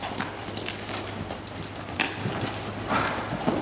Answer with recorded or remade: recorded